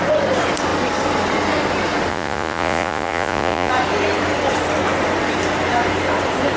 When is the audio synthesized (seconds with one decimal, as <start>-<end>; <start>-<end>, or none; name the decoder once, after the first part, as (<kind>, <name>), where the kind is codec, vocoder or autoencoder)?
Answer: 2.1-3.7 (vocoder, Vocos)